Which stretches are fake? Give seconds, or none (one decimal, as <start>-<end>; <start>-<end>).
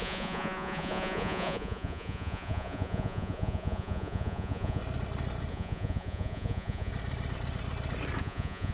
0.0-4.8; 5.5-6.9; 8.2-8.7